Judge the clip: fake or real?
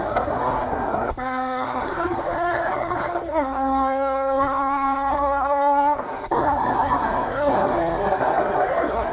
fake